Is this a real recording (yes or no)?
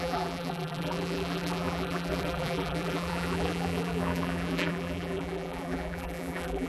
no